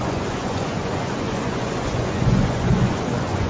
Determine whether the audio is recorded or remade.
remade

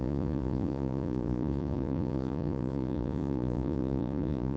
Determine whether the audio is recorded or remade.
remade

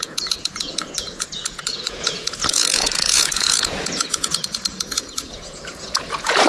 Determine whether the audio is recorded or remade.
remade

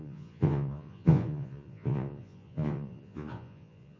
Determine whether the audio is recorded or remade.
remade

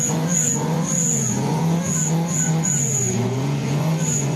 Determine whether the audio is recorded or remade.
remade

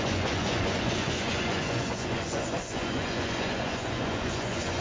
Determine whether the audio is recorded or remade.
remade